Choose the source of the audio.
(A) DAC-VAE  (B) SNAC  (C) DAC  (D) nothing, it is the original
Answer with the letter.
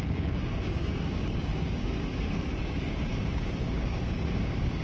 C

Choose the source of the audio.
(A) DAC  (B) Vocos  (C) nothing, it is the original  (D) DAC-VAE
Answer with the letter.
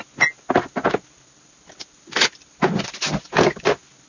C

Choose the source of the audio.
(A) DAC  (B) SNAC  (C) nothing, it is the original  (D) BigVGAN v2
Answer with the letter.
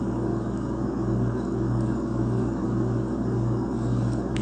A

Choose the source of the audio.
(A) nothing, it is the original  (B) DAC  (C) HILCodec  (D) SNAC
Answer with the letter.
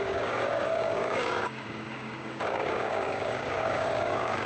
B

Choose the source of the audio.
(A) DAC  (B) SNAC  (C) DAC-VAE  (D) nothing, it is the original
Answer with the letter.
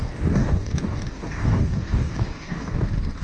A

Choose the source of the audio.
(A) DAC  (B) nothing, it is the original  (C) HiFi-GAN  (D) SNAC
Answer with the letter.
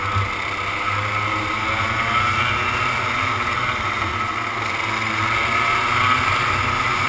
B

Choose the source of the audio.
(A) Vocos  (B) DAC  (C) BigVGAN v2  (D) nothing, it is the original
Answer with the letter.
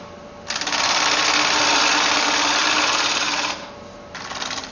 D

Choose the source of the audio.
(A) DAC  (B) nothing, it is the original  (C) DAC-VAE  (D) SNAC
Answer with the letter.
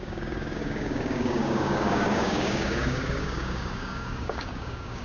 A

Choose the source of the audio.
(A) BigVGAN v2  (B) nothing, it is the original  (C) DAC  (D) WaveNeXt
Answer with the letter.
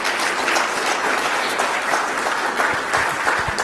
B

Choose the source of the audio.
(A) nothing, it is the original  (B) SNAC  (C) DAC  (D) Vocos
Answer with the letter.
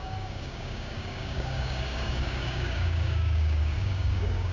C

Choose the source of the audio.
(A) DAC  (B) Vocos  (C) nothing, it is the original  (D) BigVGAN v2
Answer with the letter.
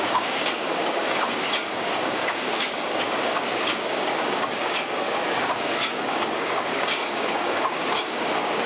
A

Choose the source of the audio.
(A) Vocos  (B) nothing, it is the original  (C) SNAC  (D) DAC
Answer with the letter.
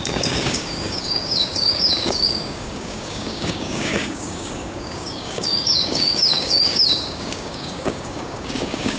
D